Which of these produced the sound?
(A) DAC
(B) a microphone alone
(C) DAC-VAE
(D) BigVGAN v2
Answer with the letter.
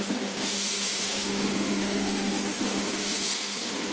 C